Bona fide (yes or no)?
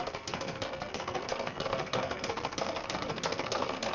no